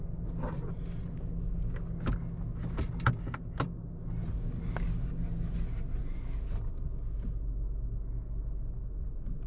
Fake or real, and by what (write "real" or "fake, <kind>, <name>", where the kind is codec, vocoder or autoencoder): real